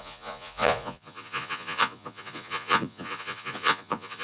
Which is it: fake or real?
fake